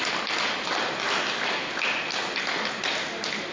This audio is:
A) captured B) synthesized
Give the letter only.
A